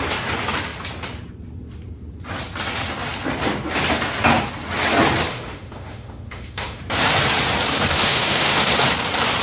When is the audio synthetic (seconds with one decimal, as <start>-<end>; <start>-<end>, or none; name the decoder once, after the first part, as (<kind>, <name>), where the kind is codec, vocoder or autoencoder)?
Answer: 5.3-6.8 (autoencoder, DAC-VAE); 7.9-8.6